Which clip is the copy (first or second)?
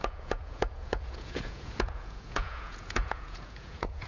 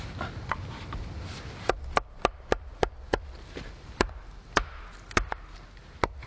first